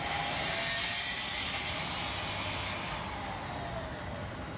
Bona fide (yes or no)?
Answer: yes